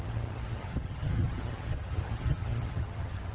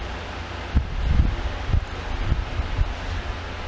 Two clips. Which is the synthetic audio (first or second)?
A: first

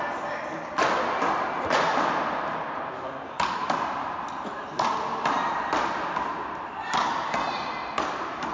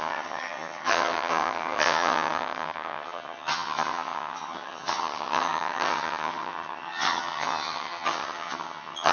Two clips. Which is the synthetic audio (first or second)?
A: second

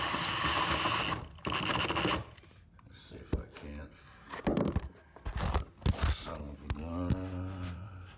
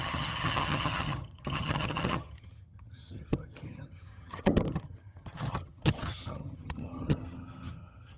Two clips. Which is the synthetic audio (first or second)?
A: second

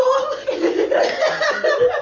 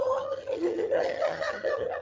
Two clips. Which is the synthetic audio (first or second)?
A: second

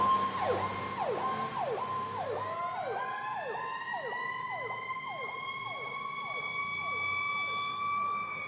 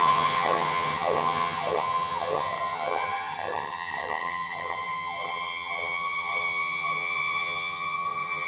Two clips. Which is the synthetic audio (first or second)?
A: second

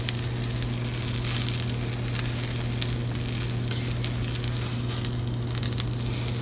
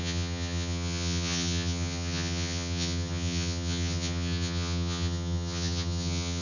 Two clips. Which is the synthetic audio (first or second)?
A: second